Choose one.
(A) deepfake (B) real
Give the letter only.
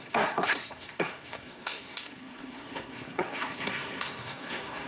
A